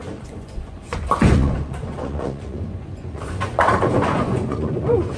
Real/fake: fake